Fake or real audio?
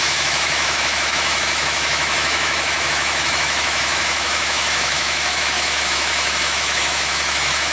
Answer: fake